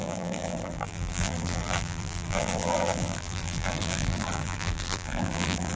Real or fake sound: fake